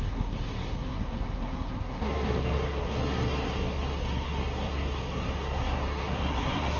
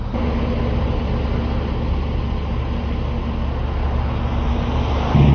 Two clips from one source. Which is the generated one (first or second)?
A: first